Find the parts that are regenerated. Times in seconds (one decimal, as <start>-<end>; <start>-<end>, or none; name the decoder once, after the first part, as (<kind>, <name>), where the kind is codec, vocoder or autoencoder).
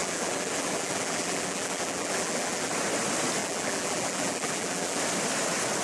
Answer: 0.0-2.7 (vocoder, BigVGAN v2); 3.4-5.0